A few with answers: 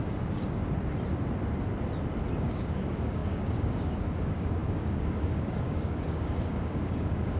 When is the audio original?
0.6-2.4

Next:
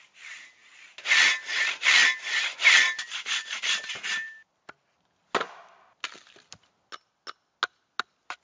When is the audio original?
0.0-8.4

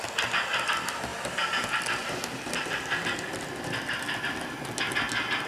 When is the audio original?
0.0-1.1; 4.4-5.5

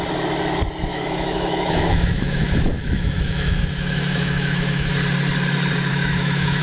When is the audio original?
0.0-0.9; 4.9-5.9